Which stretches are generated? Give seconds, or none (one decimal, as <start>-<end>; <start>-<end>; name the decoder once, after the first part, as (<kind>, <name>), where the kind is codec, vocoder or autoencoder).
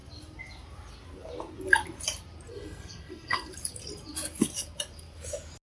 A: 2.5-3.5 (codec, SNAC)